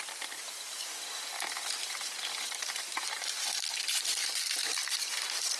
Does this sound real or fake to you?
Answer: fake